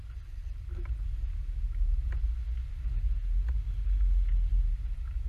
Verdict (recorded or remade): recorded